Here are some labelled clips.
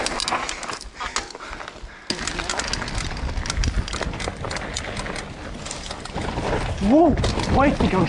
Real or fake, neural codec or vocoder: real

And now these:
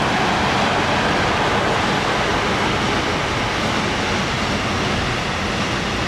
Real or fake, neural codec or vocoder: real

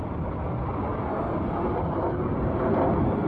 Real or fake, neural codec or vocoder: real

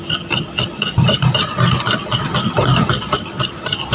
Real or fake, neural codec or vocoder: real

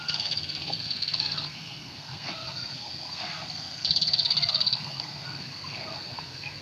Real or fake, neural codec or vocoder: fake, codec, SNAC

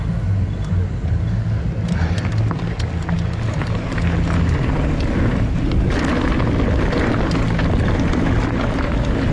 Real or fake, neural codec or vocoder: real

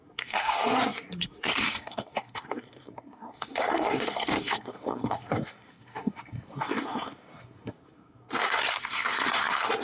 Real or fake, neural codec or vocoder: fake, codec, SNAC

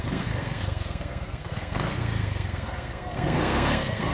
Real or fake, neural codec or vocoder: fake, codec, SNAC